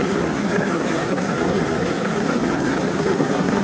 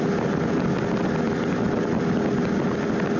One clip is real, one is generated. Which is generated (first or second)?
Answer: first